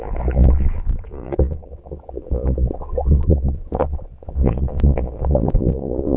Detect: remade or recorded remade